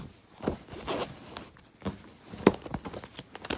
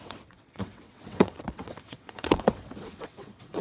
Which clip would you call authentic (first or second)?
first